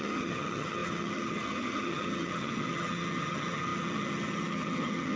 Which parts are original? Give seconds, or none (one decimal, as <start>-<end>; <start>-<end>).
none

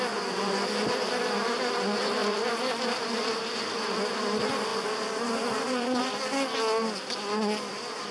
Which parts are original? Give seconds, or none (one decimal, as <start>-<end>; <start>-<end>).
0.0-2.2; 3.4-4.7; 6.0-8.1

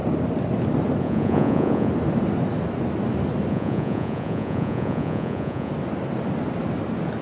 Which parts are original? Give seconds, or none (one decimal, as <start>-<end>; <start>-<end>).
0.0-1.0; 1.9-3.5; 5.7-7.2

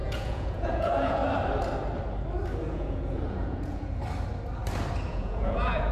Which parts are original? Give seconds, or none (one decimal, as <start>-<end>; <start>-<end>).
1.2-2.7; 4.0-5.1